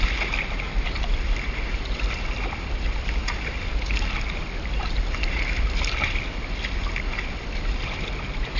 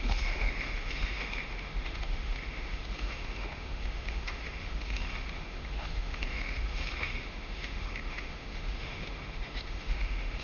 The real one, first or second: first